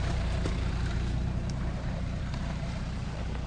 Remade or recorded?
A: remade